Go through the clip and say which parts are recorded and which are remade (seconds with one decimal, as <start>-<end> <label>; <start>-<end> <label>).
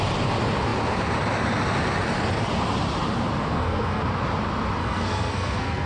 0.0-3.4 recorded; 3.4-4.0 remade; 4.0-4.8 recorded; 4.8-5.9 remade